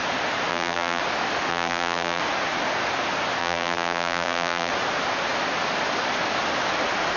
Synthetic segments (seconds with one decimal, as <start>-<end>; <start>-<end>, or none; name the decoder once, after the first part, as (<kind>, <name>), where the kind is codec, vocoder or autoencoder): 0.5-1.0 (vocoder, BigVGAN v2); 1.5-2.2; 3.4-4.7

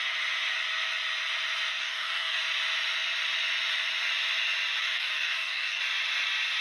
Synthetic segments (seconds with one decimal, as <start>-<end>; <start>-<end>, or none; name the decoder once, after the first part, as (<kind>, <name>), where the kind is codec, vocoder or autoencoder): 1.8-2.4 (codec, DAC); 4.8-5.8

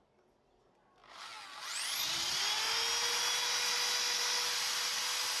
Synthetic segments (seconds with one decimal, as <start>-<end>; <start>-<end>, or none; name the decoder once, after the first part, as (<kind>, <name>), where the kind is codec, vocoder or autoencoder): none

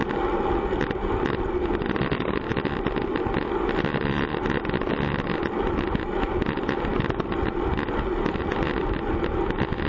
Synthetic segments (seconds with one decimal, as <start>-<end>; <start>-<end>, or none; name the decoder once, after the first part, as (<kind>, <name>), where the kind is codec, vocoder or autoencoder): none

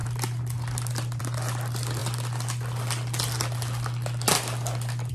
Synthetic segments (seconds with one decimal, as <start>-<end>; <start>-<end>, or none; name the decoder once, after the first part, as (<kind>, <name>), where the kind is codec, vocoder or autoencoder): none

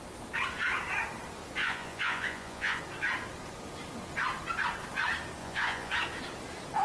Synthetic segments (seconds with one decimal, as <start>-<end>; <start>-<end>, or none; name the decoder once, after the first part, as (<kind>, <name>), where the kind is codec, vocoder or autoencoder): 1.6-2.8 (vocoder, Vocos); 5.4-5.9

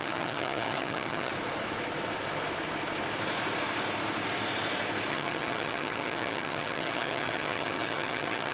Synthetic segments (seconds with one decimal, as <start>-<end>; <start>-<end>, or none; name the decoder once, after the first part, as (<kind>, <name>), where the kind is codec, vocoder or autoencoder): 0.0-1.3 (vocoder, HiFi-GAN); 5.1-8.5

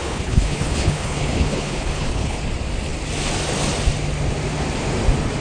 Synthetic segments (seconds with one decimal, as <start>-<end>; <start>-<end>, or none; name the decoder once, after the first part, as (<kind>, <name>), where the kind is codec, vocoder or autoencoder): 0.0-2.4 (codec, HILCodec)